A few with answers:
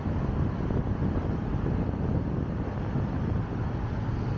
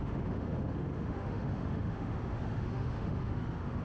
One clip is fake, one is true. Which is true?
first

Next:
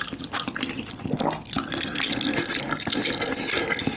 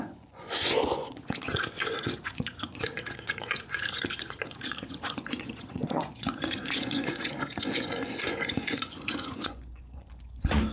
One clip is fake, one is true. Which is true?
first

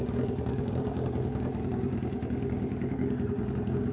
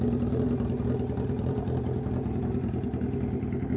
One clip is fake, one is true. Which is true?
second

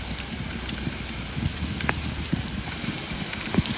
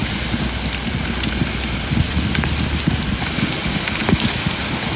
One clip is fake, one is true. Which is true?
second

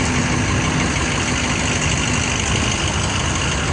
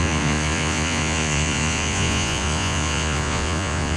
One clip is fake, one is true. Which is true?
first